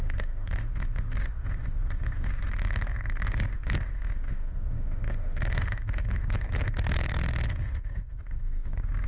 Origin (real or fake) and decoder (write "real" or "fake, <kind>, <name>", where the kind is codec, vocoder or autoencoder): fake, autoencoder, DAC-VAE